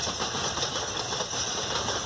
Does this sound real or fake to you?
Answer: real